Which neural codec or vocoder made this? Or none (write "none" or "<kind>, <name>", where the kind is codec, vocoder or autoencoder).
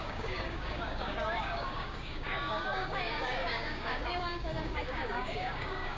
codec, DAC